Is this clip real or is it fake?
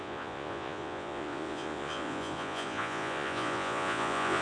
fake